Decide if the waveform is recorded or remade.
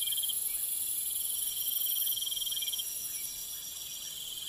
recorded